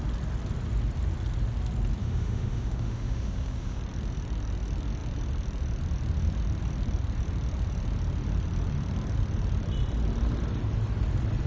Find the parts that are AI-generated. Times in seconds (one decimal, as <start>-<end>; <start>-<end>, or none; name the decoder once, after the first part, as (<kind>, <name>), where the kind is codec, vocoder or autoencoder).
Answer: 2.0-3.8 (autoencoder, DAC-VAE)